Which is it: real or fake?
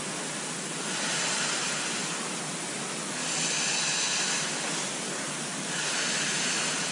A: real